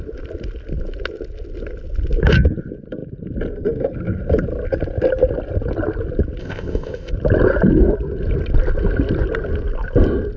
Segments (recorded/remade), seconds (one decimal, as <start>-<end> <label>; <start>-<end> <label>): 0.0-6.4 recorded; 6.4-7.1 remade; 7.1-10.4 recorded